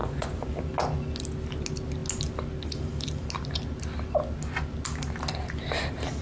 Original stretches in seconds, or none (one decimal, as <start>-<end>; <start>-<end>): 0.5-6.2